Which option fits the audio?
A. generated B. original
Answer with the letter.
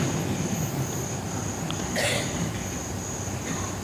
B